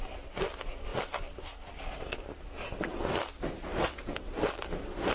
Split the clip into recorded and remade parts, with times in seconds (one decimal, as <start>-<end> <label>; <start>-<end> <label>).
0.0-5.1 recorded